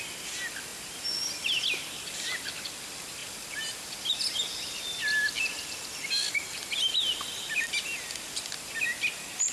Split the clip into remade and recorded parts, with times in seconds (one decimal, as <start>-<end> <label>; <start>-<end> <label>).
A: 0.0-9.5 recorded